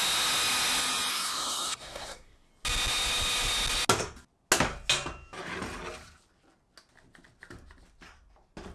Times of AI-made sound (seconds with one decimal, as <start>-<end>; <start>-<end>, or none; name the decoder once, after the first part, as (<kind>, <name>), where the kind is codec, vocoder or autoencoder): 1.1-2.5 (codec, SNAC)